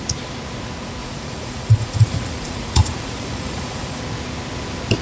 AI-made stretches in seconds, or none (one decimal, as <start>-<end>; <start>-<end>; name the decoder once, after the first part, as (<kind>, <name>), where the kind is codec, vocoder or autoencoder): 1.0-4.0 (vocoder, Vocos)